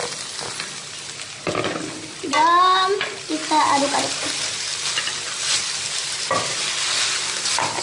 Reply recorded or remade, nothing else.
recorded